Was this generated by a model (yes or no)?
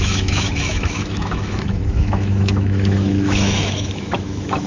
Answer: yes